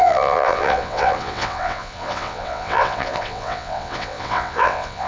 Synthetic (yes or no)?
yes